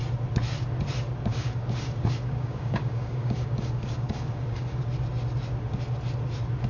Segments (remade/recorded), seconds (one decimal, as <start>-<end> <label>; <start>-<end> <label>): 0.0-1.3 recorded; 1.3-4.8 remade; 4.8-6.7 recorded